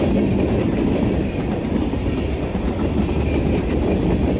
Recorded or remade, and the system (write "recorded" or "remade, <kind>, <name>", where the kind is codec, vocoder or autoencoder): remade, vocoder, BigVGAN v2